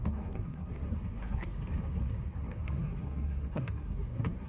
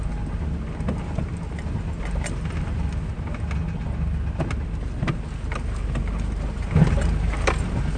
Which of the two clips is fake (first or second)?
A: first